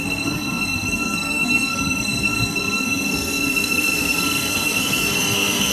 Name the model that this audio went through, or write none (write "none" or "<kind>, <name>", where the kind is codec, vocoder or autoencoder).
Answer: codec, SNAC